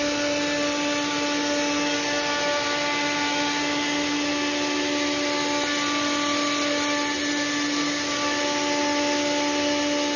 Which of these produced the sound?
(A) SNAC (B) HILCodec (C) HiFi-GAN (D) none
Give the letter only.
D